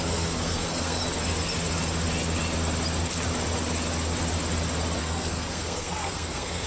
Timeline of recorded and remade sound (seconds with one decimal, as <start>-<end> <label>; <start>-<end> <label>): 0.0-1.0 remade; 1.0-5.0 recorded; 5.0-6.7 remade